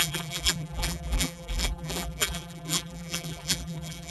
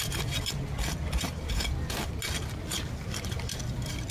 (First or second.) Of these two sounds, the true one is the second